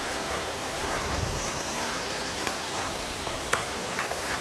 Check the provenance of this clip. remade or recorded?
remade